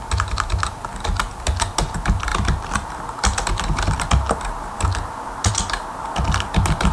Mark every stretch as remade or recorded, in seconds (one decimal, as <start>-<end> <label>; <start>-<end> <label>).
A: 0.0-6.9 recorded